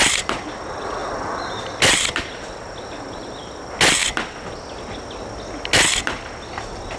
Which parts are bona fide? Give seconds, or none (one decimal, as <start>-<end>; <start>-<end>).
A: 0.0-7.0